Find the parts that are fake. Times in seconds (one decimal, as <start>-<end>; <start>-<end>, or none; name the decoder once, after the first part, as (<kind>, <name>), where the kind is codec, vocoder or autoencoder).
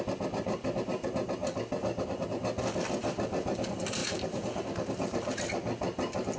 4.0-4.6 (vocoder, BigVGAN v2)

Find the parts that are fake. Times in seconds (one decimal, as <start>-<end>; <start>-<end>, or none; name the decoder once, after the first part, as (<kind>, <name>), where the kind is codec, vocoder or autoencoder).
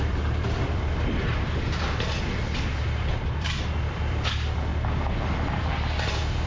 0.0-1.3 (vocoder, BigVGAN v2); 3.1-4.7; 6.1-6.5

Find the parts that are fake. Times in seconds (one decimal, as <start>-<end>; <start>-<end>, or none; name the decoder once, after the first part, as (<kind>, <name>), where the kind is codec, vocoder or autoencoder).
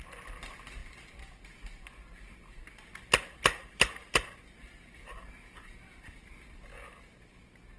3.4-6.3 (vocoder, BigVGAN v2)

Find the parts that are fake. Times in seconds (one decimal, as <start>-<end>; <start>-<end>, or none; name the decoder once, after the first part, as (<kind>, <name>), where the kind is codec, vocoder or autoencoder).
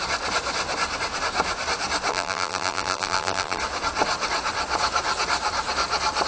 2.1-3.6 (vocoder, BigVGAN v2)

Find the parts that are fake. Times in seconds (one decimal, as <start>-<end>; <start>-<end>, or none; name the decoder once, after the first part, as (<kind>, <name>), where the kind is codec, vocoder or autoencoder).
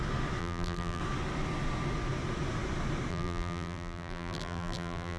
0.4-1.0 (vocoder, BigVGAN v2); 3.1-5.2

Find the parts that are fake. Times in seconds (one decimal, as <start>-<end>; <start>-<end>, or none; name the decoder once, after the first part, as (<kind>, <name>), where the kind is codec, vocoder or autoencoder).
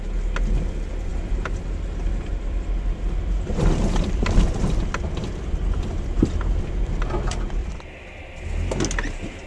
1.1-1.6 (vocoder, BigVGAN v2); 2.1-6.6; 7.6-8.5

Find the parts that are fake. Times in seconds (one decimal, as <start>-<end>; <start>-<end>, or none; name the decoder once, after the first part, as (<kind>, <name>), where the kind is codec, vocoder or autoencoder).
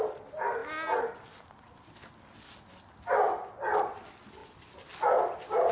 none